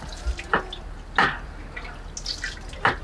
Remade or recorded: recorded